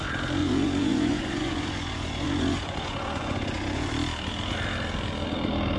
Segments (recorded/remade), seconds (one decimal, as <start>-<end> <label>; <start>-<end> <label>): 0.0-0.4 recorded; 0.4-3.9 remade; 3.9-5.8 recorded